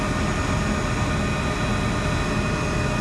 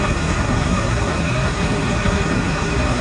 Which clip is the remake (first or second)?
second